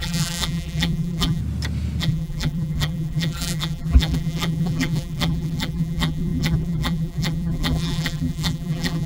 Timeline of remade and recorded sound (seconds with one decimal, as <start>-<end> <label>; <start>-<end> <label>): 0.0-1.4 remade; 1.4-2.0 recorded; 2.0-9.1 remade